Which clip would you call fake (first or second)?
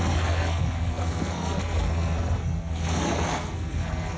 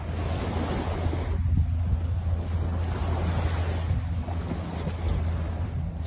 first